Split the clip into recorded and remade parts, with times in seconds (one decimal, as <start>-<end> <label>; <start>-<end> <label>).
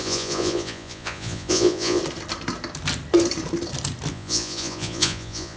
0.0-2.0 remade; 2.0-4.1 recorded; 4.1-5.6 remade